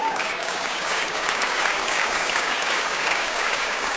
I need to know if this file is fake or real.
fake